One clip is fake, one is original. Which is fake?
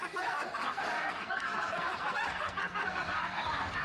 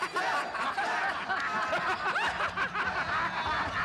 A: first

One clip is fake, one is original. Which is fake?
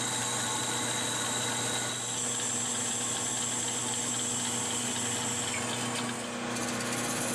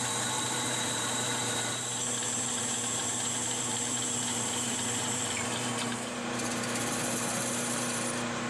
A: second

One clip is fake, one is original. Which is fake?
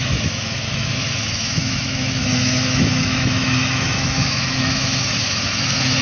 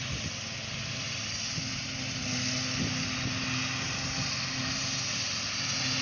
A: first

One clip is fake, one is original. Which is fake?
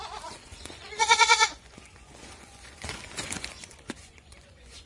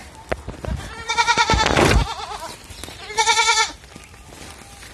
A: first